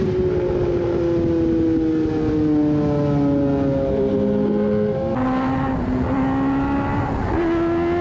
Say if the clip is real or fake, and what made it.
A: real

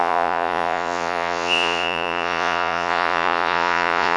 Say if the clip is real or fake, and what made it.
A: fake, vocoder, Vocos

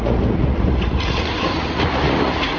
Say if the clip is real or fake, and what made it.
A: fake, vocoder, Vocos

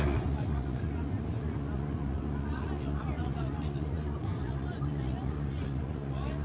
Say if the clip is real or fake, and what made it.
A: fake, vocoder, Vocos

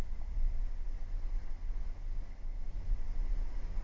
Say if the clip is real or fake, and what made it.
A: real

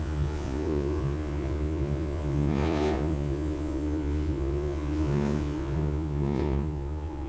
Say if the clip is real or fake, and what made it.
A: fake, vocoder, Vocos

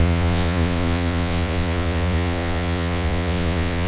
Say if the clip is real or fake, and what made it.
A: fake, vocoder, Vocos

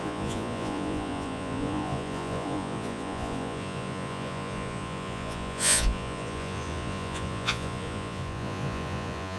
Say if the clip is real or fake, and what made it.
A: fake, vocoder, Vocos